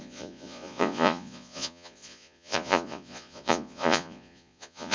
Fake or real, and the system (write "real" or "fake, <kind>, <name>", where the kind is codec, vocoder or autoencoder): fake, vocoder, Vocos